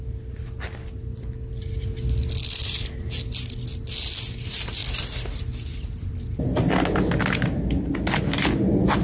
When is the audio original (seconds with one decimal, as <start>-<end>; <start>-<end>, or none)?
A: 0.0-9.0

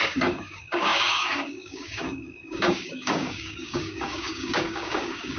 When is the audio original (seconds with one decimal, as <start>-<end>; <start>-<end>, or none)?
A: none

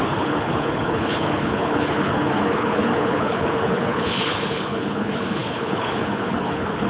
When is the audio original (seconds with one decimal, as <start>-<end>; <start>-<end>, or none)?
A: none

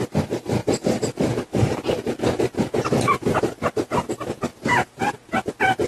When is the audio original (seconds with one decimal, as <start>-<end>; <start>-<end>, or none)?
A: 0.0-0.6; 4.1-4.5; 5.5-5.9

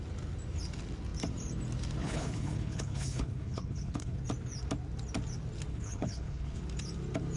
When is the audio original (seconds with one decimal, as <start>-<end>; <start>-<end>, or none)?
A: 0.0-2.0; 4.2-5.7; 6.6-7.4

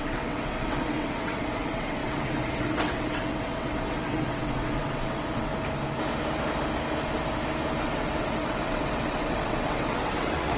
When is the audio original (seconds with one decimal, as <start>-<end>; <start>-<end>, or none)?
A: 5.5-7.8